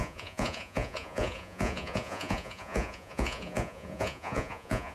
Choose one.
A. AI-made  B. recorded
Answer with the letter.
A